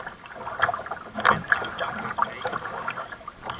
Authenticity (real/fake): real